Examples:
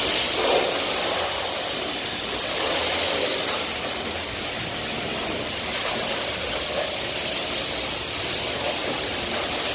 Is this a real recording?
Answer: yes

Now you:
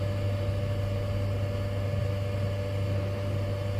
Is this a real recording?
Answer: yes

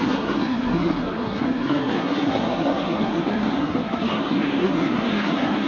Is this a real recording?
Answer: no